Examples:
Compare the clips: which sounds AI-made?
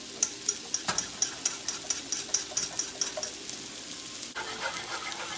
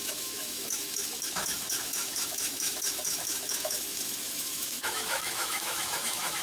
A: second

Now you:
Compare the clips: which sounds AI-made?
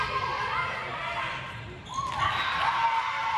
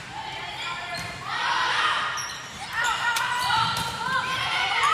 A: second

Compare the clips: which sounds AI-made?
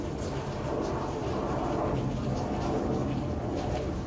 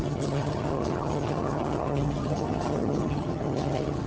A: second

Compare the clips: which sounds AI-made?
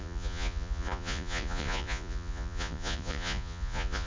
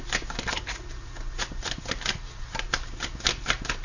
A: first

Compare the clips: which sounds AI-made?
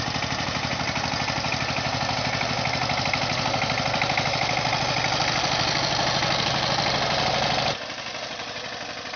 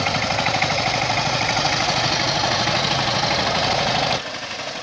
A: second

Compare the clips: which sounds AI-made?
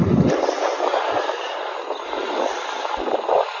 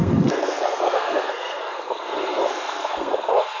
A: second